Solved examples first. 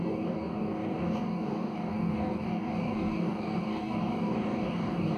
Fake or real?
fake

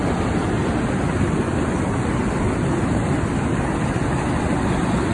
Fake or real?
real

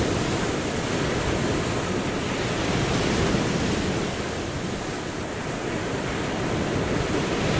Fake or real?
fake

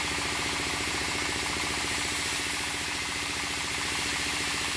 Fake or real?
fake